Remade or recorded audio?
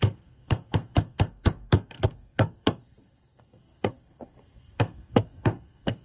remade